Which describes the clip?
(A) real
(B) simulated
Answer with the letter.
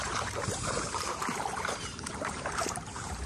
B